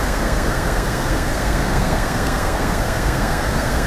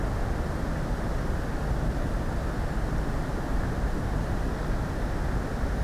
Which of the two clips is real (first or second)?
second